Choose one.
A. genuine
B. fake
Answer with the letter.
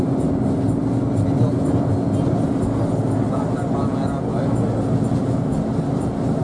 A